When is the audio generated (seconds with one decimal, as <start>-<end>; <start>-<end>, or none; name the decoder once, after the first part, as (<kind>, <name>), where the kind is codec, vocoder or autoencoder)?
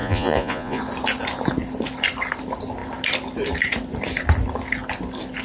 0.0-0.8 (vocoder, Vocos)